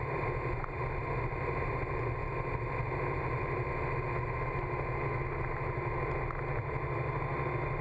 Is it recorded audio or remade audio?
recorded